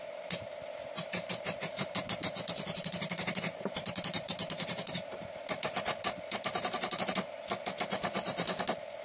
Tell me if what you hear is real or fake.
fake